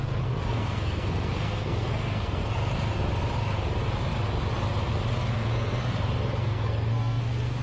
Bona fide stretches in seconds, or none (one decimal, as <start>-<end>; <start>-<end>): 2.6-5.3; 5.8-6.4